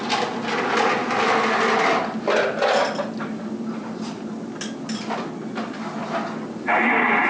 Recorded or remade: recorded